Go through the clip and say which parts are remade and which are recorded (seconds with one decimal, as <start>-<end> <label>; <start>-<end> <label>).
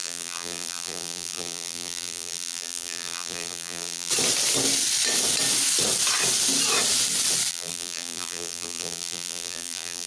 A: 0.0-4.1 remade; 4.1-7.5 recorded; 7.5-10.1 remade